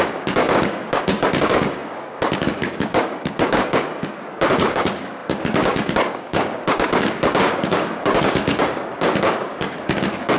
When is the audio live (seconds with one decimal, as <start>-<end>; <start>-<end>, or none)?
none